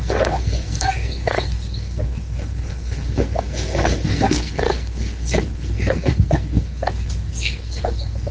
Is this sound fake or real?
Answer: fake